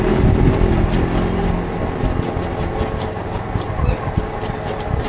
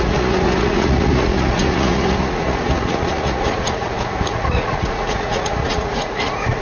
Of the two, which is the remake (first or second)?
second